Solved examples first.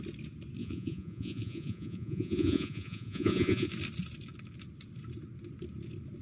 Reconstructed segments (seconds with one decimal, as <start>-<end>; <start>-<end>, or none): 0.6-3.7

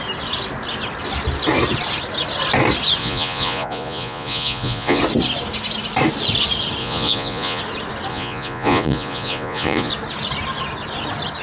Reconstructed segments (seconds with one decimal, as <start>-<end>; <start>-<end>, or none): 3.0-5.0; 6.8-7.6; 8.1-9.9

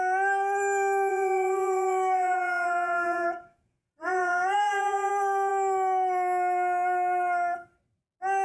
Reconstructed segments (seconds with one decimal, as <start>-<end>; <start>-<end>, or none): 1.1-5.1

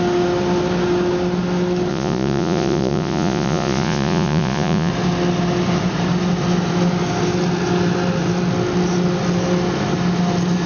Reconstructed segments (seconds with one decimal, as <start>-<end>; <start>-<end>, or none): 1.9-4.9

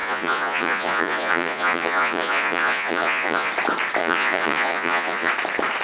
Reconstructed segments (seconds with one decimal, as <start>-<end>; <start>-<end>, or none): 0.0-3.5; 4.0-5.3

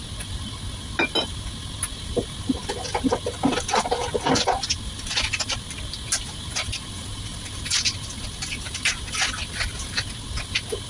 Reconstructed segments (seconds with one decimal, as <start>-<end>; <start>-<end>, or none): none

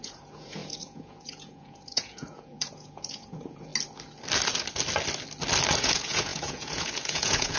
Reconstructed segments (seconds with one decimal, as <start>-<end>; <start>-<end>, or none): 0.0-3.7; 5.8-7.6

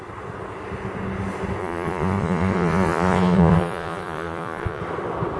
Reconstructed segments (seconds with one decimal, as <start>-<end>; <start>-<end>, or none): 1.6-4.8